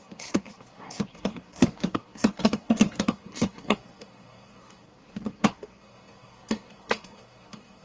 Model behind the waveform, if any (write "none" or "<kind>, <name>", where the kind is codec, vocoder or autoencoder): codec, SNAC